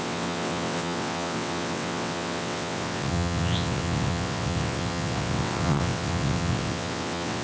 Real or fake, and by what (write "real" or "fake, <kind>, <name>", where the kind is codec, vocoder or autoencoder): fake, vocoder, WaveNeXt